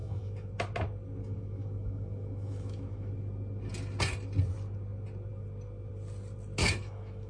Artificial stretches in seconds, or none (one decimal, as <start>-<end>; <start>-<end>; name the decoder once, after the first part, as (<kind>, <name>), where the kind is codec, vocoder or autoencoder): 0.0-0.5 (autoencoder, DAC-VAE); 1.2-3.1; 6.6-7.3